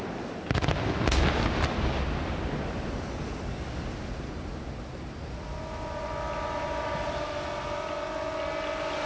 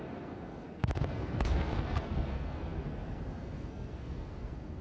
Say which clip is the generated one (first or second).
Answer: second